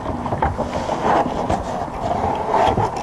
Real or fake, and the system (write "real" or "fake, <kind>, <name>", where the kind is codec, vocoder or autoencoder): real